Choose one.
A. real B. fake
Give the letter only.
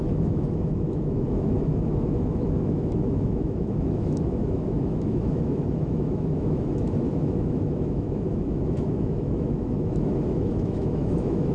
B